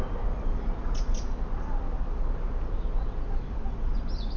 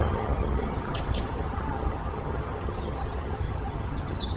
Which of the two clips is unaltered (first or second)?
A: first